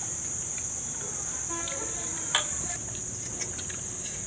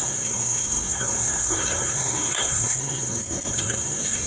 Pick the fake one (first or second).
second